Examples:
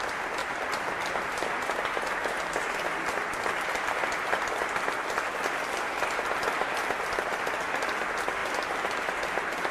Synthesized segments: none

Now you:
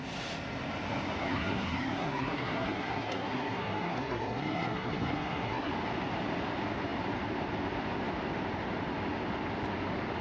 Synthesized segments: 1.2-5.7 (codec, SNAC)

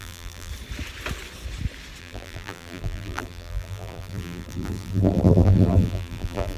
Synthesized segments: 0.0-0.5 (vocoder, BigVGAN v2); 2.0-6.6

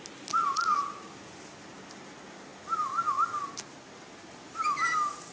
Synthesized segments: none

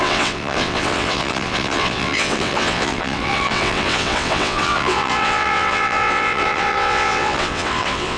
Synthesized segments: 0.0-8.2 (vocoder, WaveNeXt)

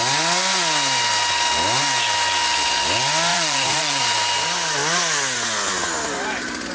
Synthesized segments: 3.3-4.0 (vocoder, Vocos)